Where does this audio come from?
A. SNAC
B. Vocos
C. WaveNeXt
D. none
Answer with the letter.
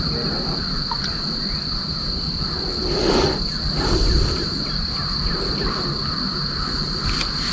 D